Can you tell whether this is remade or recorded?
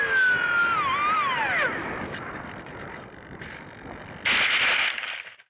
recorded